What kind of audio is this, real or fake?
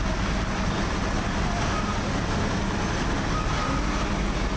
real